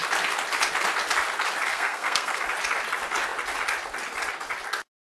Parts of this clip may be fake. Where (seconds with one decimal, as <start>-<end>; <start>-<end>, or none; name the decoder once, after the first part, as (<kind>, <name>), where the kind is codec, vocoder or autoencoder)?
1.7-2.4 (codec, SNAC)